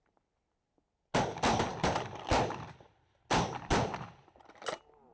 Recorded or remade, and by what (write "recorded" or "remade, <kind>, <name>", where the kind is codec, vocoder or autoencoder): recorded